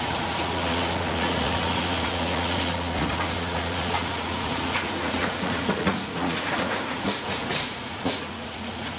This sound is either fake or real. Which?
fake